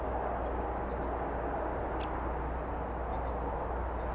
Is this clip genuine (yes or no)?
yes